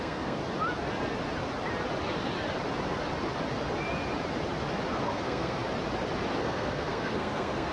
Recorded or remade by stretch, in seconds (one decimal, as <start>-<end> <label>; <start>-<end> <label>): 0.0-0.4 remade; 0.4-5.0 recorded; 5.0-5.6 remade; 5.6-6.4 recorded; 6.4-7.7 remade